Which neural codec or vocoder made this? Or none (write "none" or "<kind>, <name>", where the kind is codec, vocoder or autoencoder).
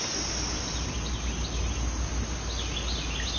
none